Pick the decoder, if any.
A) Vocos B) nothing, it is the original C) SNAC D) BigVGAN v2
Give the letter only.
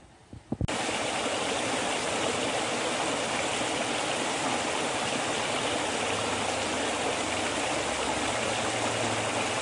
B